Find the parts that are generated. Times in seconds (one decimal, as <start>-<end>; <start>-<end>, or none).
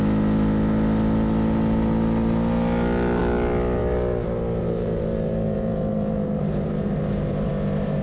4.6-7.5